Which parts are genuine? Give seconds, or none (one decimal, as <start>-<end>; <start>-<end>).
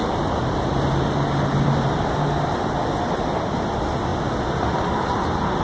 0.0-5.6